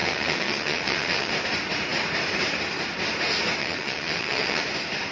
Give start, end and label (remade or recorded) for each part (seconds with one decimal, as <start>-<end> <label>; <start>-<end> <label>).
0.0-1.3 remade; 1.3-3.6 recorded; 3.6-4.6 remade; 4.6-5.1 recorded